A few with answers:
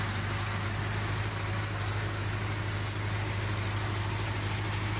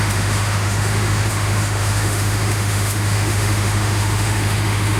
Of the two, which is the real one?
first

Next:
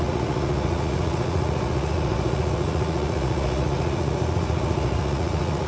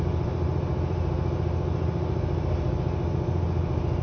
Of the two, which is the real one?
second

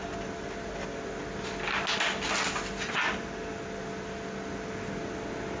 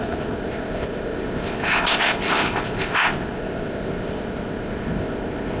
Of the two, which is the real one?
first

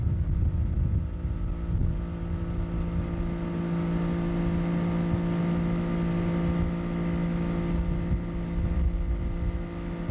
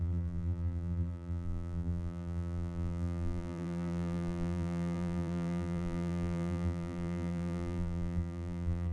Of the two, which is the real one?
first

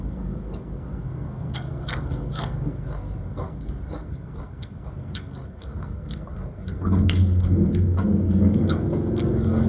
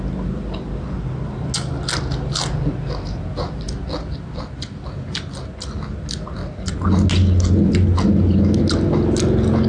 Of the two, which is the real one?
second